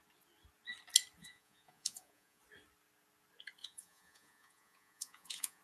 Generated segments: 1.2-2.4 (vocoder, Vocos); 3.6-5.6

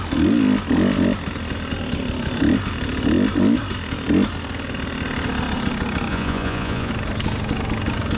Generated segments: 6.1-6.9 (vocoder, Vocos)

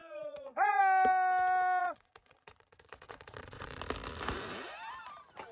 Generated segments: 0.0-0.8 (vocoder, Vocos); 1.8-3.8

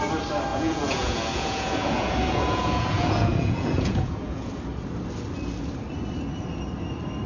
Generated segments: 0.5-4.5 (vocoder, Vocos)

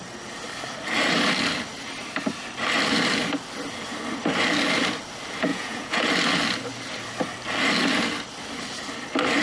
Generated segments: 5.5-6.1 (vocoder, Vocos)

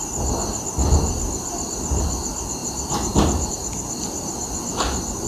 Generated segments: none

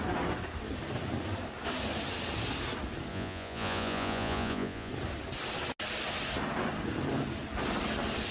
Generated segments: 3.1-4.9 (vocoder, Vocos)

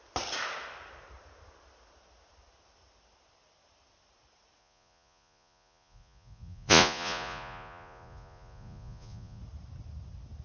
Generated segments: 4.6-9.4 (vocoder, Vocos)